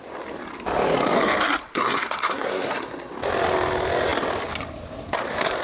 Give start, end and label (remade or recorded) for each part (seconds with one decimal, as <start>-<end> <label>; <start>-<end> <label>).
0.0-1.7 recorded; 1.7-3.1 remade; 3.1-5.6 recorded